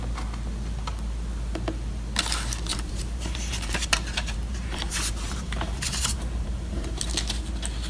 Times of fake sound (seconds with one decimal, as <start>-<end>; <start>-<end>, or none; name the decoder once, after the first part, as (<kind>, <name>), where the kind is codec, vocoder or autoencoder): 2.7-7.0 (vocoder, BigVGAN v2)

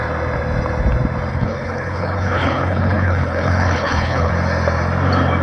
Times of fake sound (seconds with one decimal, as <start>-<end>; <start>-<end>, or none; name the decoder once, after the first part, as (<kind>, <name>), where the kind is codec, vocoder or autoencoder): 1.3-4.3 (codec, HILCodec)

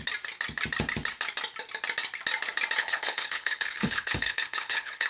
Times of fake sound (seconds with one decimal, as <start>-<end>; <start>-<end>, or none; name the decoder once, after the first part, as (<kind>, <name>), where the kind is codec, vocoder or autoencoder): 2.8-5.1 (codec, HILCodec)

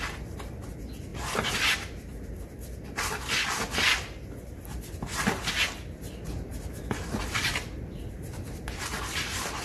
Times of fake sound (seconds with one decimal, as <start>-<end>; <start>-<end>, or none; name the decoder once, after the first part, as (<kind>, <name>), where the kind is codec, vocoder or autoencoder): none

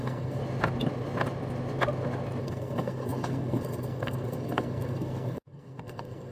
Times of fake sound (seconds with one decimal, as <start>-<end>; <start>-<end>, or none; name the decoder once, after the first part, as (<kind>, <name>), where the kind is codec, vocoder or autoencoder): 0.0-0.4 (codec, SNAC); 2.4-6.3